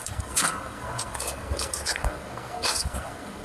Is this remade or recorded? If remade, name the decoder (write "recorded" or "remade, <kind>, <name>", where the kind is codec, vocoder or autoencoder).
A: remade, codec, SNAC